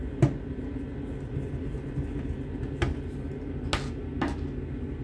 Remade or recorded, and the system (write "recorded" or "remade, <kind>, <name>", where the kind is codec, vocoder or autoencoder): recorded